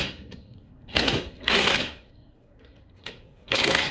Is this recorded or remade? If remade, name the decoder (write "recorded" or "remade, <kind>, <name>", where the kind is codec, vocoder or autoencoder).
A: remade, codec, SNAC